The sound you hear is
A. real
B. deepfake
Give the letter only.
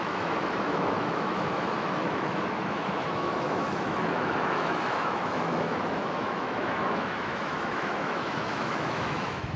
B